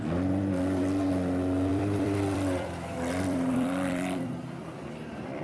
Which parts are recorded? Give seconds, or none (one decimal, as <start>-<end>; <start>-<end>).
0.0-1.7; 4.9-5.4